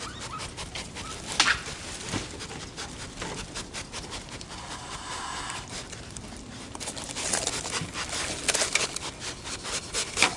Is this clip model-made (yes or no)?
no